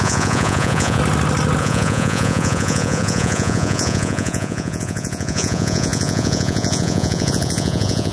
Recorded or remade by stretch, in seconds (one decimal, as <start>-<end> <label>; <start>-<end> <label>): 0.0-1.0 remade; 1.0-1.6 recorded; 1.6-8.1 remade